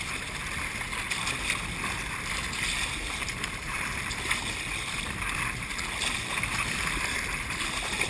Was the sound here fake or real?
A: real